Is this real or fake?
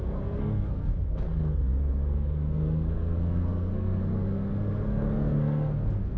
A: fake